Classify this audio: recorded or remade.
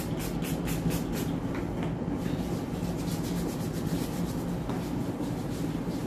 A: recorded